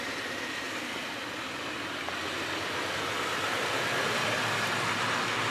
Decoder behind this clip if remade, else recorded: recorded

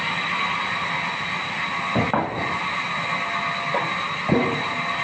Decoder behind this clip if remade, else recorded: recorded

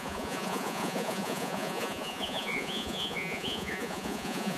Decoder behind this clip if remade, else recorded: remade, vocoder, Vocos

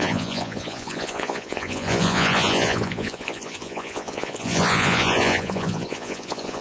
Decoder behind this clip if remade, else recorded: remade, vocoder, Vocos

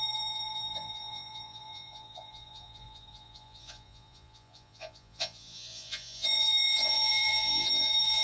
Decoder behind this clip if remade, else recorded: remade, vocoder, Vocos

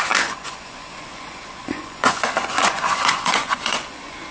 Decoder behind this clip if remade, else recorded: remade, vocoder, Vocos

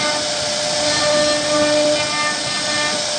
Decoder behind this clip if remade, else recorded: recorded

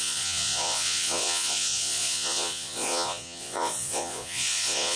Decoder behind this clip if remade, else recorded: remade, vocoder, Vocos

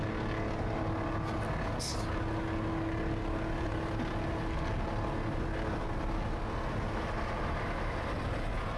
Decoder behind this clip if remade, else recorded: recorded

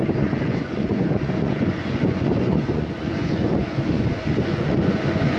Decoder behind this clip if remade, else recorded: remade, vocoder, Vocos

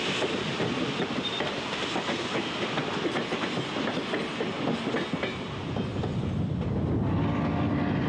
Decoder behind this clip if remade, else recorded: recorded